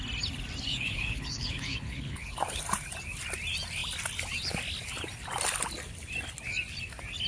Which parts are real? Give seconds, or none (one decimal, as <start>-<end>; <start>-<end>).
0.0-0.7; 2.6-7.3